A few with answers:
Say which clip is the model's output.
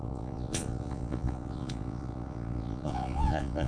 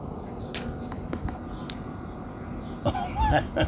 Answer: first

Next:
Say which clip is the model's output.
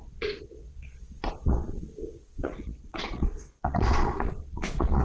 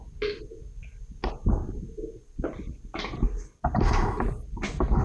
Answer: first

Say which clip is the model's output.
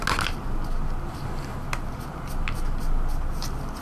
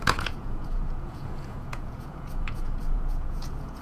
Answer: second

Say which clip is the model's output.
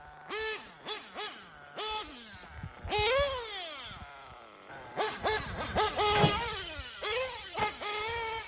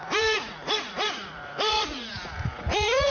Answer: second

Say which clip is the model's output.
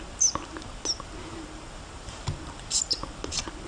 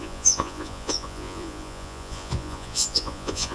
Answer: second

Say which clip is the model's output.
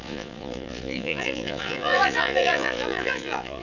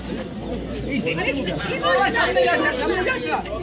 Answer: first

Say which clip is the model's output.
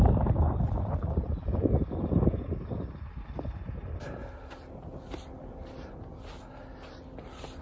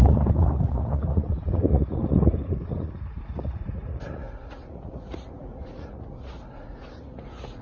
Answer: second